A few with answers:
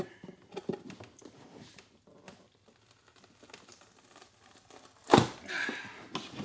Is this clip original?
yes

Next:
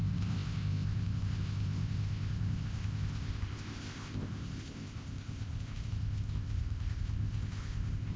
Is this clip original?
no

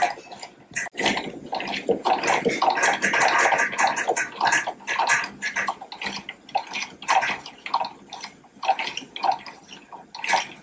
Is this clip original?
yes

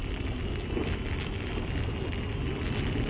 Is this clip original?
yes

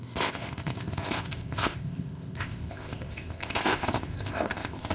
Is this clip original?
no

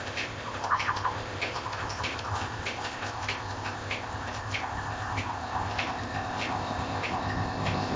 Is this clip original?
no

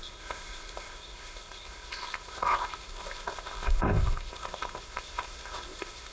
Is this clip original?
no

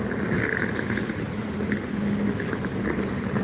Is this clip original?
yes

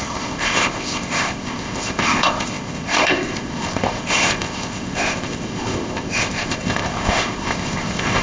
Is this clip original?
no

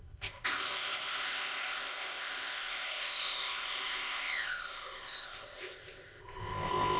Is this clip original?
no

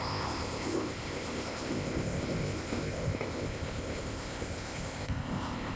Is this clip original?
no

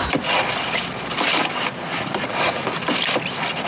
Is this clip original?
yes